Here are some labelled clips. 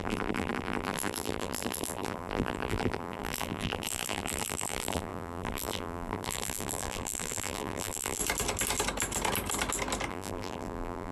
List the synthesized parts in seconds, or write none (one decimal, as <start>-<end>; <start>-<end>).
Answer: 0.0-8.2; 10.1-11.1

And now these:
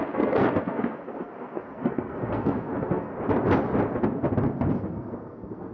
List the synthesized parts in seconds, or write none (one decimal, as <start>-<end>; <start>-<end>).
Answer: 0.0-3.1; 4.7-5.7

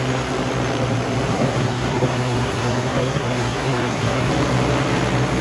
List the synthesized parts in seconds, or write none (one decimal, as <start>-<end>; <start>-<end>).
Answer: 1.3-4.3